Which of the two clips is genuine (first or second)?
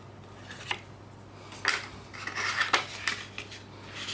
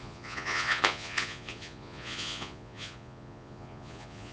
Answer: first